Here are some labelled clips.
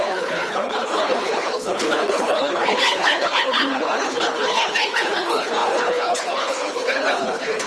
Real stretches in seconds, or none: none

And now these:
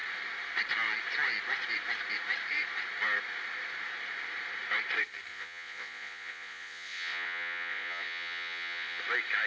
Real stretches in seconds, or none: 0.0-5.3; 9.0-9.5